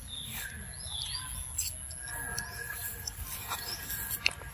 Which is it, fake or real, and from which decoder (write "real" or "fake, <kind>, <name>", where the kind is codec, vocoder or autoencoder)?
real